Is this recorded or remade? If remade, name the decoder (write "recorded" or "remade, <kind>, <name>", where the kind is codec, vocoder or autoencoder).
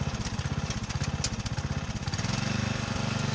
recorded